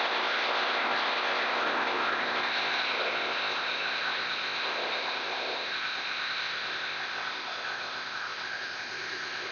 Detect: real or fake fake